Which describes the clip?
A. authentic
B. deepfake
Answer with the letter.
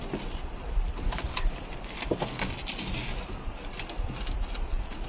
A